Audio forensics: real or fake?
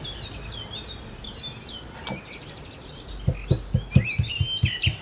real